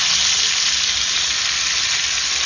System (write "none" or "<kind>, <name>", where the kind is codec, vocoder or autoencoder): none